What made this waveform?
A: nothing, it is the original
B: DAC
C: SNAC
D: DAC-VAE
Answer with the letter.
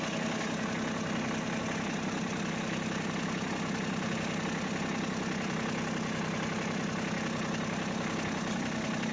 A